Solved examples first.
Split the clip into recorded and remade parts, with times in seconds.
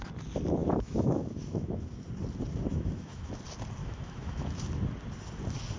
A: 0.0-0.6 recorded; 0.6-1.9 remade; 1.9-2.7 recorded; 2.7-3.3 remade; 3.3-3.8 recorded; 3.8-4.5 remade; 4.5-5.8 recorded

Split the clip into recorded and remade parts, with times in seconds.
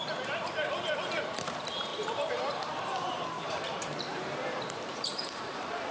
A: 0.0-5.9 remade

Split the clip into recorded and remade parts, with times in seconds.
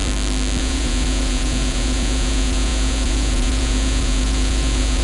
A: 0.0-0.6 recorded; 0.6-5.0 remade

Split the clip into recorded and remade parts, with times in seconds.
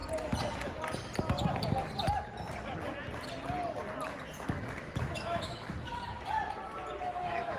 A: 0.0-4.6 recorded; 4.6-6.0 remade; 6.0-7.0 recorded; 7.0-7.6 remade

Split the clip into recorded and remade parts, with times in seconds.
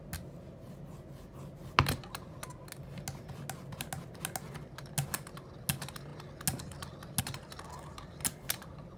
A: 0.0-9.0 recorded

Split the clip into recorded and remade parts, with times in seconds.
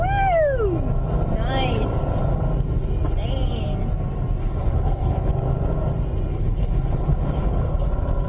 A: 0.0-4.4 recorded; 4.4-5.3 remade; 5.3-6.3 recorded; 6.3-7.9 remade; 7.9-8.3 recorded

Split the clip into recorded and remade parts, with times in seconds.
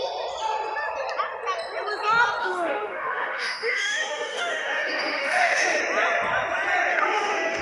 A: 0.0-2.4 recorded; 2.4-5.8 remade; 5.8-6.9 recorded; 6.9-7.6 remade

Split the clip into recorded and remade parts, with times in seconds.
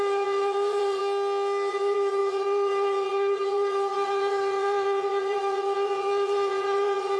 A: 0.0-1.0 remade; 1.0-1.7 recorded; 1.7-7.2 remade